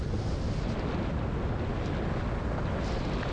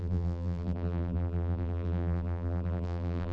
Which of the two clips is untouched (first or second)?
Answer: first